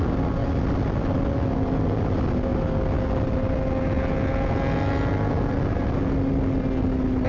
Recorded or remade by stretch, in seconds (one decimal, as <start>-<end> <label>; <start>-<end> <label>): 0.0-7.3 recorded